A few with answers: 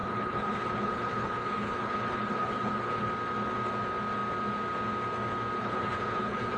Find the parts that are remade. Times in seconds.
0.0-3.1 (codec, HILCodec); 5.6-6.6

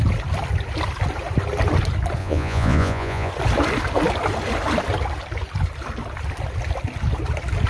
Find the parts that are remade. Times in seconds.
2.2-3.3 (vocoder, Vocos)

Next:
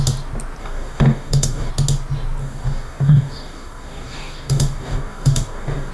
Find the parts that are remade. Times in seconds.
0.6-1.7 (codec, DAC); 2.4-5.9